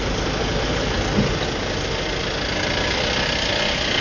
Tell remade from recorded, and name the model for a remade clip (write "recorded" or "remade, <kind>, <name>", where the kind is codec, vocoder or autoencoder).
recorded